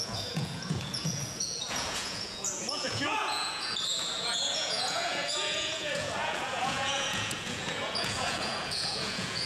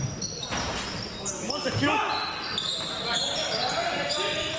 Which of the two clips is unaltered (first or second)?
second